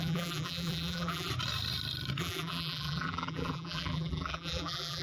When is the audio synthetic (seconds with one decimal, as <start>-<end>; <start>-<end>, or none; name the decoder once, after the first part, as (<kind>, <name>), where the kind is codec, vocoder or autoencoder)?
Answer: 0.0-1.3 (vocoder, BigVGAN v2); 2.2-5.0